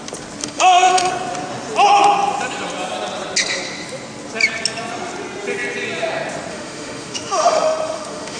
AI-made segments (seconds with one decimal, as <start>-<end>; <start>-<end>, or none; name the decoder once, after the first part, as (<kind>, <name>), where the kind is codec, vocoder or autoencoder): 0.4-1.1 (autoencoder, DAC-VAE); 6.5-8.4